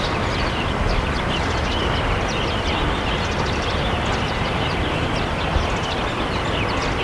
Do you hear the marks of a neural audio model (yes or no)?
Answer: no